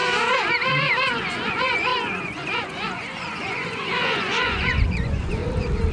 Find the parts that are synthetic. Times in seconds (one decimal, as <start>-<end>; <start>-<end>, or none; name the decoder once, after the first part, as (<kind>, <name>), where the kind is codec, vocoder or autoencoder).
1.1-5.4 (vocoder, Vocos)